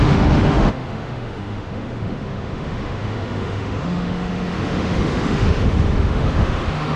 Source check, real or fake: fake